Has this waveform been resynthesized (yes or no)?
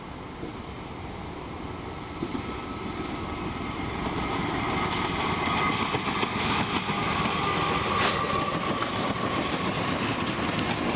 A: no